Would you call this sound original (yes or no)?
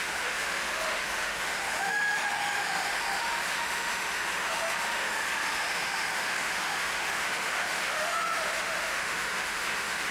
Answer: no